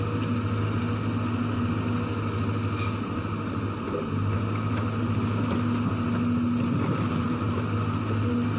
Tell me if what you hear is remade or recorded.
recorded